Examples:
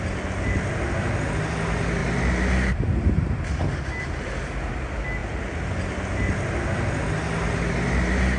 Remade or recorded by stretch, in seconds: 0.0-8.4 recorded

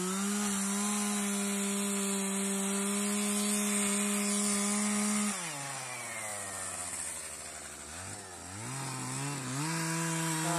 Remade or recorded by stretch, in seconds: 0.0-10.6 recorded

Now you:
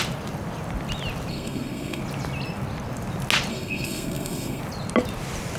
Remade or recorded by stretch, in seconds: 0.0-1.3 recorded; 1.3-2.0 remade; 2.0-3.5 recorded; 3.5-4.6 remade; 4.6-5.6 recorded

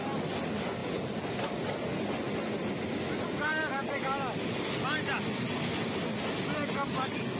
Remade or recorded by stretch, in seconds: 0.0-7.4 recorded

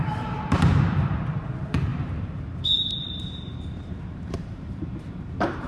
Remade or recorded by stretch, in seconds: 0.0-5.7 remade

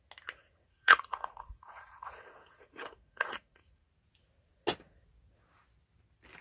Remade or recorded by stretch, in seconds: 0.0-0.4 recorded; 0.4-3.9 remade; 3.9-6.4 recorded